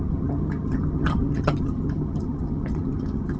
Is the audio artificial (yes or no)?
yes